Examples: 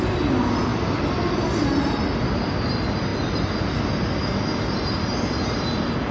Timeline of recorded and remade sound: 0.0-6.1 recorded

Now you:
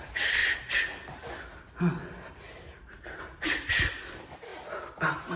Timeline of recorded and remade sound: 0.0-5.4 recorded